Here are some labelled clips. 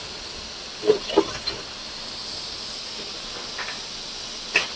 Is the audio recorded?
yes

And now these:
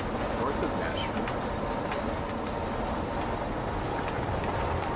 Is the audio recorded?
yes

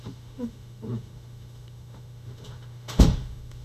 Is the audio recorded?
no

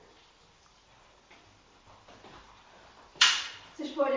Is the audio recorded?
no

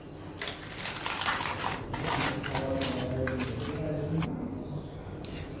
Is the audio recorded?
yes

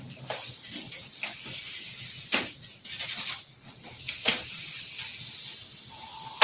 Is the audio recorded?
yes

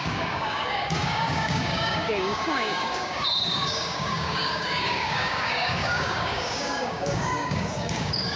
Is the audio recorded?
no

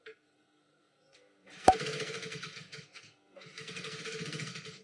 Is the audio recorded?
no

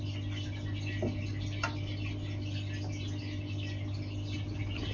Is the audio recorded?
yes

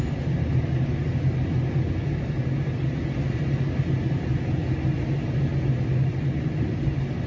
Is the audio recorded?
yes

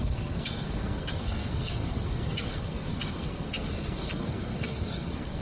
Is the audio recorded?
no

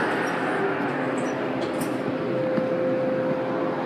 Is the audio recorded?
yes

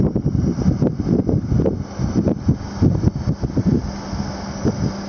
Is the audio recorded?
yes